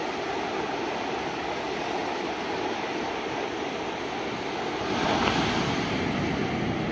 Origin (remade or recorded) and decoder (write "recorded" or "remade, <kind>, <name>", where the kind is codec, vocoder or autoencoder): recorded